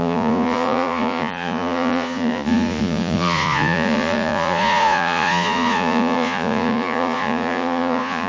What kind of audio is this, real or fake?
fake